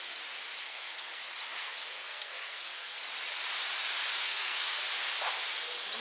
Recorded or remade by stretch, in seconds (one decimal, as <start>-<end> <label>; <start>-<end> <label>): 0.0-0.6 recorded; 0.6-1.2 remade; 1.2-1.6 recorded; 1.6-3.0 remade; 3.0-4.2 recorded; 4.2-4.8 remade; 4.8-6.0 recorded